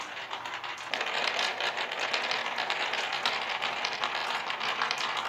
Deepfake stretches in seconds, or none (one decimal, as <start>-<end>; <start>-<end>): none